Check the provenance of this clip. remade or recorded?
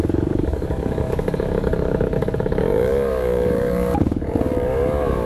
remade